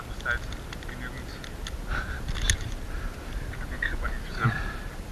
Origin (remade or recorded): recorded